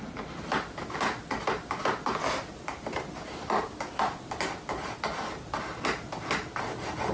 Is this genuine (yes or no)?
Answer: yes